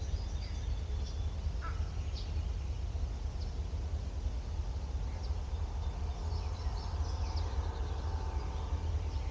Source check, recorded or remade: recorded